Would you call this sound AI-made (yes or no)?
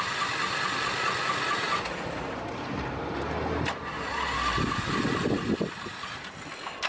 no